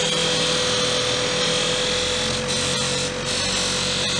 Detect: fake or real real